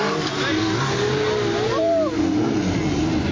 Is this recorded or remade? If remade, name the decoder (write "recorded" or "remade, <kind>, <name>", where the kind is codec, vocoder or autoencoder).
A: recorded